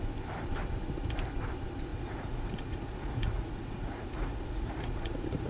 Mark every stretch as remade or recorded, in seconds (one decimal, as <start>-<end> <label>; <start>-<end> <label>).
0.0-1.9 recorded; 1.9-5.5 remade